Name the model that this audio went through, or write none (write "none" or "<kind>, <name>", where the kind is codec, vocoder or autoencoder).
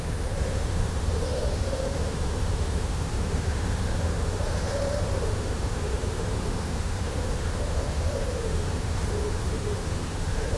autoencoder, DAC-VAE